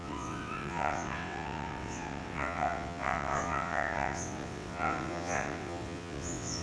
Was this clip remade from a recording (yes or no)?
yes